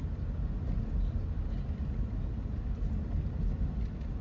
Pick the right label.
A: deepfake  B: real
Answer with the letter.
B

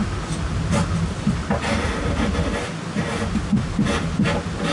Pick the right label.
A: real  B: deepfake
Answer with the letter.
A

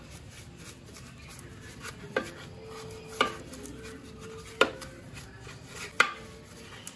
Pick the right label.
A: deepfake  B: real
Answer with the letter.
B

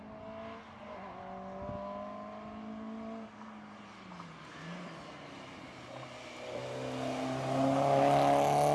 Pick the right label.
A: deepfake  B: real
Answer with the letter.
B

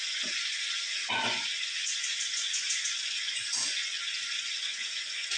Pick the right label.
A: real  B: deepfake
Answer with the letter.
B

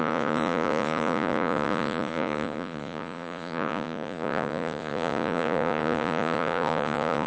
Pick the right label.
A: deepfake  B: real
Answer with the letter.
A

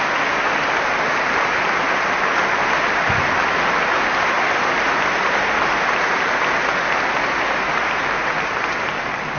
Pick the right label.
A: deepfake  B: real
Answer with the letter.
B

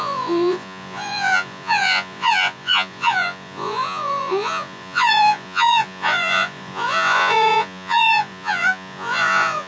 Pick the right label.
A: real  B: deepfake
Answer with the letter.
B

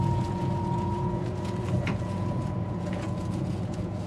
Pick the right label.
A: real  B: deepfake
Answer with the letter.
B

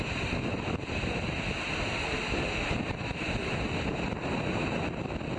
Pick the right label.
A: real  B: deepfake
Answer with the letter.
A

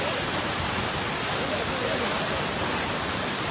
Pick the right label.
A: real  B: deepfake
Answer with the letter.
A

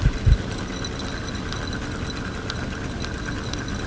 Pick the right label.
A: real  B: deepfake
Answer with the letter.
A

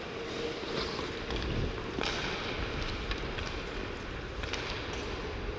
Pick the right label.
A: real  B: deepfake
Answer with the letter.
A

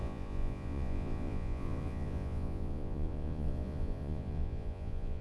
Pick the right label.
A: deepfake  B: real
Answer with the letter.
A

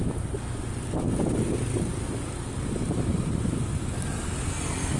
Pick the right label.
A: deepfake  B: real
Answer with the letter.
B